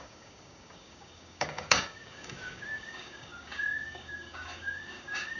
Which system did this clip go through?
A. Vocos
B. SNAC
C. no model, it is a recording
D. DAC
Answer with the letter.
D